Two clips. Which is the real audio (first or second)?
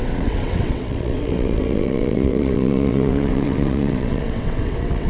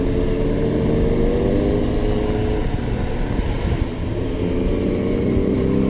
second